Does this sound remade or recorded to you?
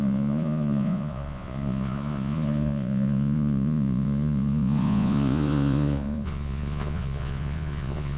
remade